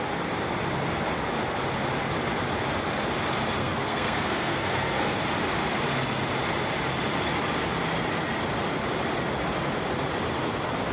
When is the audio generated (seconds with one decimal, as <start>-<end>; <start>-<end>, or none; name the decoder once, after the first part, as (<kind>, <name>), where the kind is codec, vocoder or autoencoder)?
3.6-5.2 (codec, SNAC)

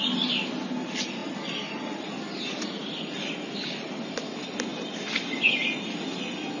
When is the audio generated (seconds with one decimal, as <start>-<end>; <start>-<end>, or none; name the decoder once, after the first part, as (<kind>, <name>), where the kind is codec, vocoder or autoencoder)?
none

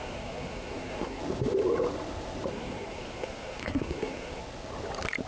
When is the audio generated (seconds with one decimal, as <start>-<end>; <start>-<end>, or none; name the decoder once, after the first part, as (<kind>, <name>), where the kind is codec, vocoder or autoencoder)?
0.0-1.2 (codec, SNAC); 2.5-4.4

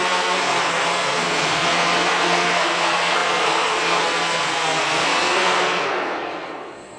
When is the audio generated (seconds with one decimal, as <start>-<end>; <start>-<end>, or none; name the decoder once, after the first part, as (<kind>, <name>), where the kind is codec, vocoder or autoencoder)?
0.0-7.0 (codec, SNAC)

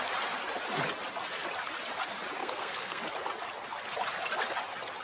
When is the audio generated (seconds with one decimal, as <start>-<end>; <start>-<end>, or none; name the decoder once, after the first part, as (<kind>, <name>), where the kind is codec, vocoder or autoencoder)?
2.4-3.0 (codec, SNAC)